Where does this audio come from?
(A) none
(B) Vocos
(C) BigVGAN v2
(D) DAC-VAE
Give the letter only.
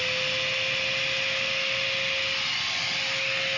A